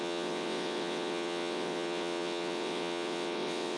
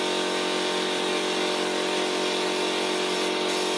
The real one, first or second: second